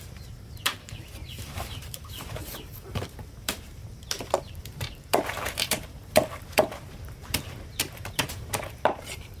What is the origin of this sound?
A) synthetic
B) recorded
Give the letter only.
A